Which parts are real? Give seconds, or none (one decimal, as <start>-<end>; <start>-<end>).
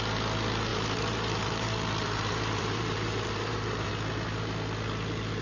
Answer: 0.0-0.7; 3.9-5.4